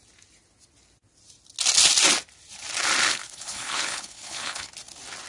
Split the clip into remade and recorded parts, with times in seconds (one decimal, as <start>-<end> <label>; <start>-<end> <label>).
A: 0.0-3.1 recorded; 3.1-4.7 remade; 4.7-5.3 recorded